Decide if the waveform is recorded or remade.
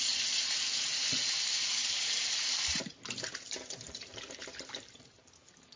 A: remade